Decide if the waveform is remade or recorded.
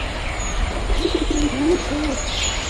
recorded